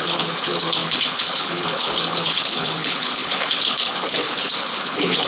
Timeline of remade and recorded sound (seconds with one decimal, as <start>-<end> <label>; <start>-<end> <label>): 0.0-5.3 remade

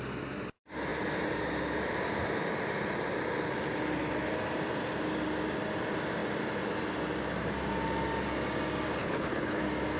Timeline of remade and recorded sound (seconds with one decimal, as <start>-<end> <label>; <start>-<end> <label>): 0.0-9.0 recorded; 9.0-9.6 remade; 9.6-10.0 recorded

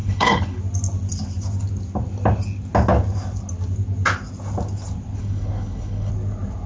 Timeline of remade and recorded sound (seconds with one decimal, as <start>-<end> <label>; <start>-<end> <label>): 0.0-0.6 remade; 0.6-5.2 recorded; 5.2-6.1 remade; 6.1-6.7 recorded

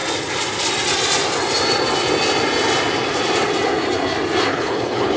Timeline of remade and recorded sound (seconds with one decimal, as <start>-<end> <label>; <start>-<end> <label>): 0.0-4.5 recorded; 4.5-5.2 remade

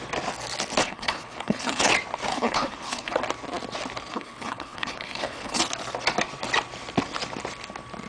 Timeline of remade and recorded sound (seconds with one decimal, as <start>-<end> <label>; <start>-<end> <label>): 0.0-0.8 recorded; 0.8-1.9 remade; 1.9-2.3 recorded; 2.3-3.2 remade; 3.2-4.1 recorded; 4.1-5.6 remade; 5.6-8.1 recorded

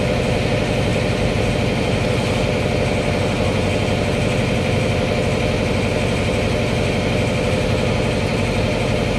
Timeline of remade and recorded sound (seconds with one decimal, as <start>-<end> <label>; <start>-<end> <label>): 0.0-9.2 recorded

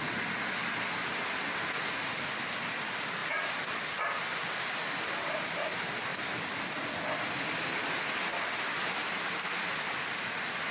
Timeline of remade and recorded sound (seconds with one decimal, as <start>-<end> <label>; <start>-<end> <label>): 0.0-10.7 recorded